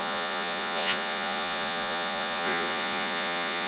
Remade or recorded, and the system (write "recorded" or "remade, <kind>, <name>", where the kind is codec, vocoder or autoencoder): remade, vocoder, Vocos